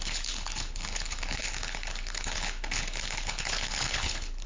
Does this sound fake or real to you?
fake